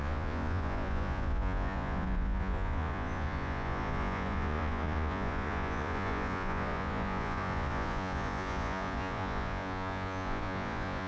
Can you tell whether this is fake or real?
fake